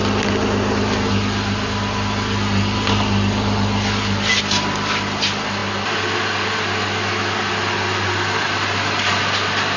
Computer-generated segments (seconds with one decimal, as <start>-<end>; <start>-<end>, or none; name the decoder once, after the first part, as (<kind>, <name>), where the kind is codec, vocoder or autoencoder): none